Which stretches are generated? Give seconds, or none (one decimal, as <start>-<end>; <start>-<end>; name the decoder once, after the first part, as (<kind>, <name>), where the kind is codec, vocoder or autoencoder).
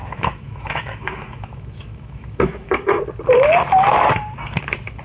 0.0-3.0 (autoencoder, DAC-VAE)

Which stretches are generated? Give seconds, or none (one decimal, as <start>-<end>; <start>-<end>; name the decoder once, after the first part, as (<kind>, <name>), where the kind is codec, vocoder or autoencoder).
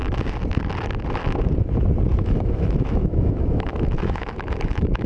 2.1-5.1 (autoencoder, DAC-VAE)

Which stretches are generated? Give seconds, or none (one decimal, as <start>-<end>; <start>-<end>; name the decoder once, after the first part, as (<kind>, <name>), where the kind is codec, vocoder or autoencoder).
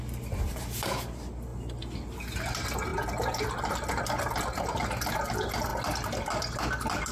none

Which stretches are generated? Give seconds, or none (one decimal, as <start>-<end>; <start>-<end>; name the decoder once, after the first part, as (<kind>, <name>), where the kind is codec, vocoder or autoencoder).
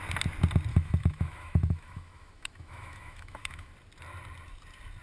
0.7-3.7 (autoencoder, DAC-VAE)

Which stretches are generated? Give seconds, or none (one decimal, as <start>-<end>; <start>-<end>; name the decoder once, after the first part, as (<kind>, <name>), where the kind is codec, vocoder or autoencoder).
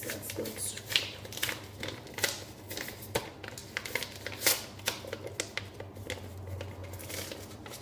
none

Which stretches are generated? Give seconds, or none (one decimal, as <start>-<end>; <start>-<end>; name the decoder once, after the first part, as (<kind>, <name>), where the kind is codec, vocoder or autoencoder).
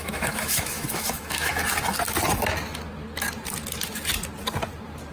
0.0-1.6 (autoencoder, DAC-VAE)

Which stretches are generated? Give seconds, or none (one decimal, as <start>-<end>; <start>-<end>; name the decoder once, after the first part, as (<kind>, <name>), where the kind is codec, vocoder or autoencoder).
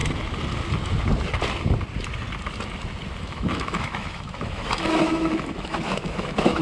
3.2-6.6 (autoencoder, DAC-VAE)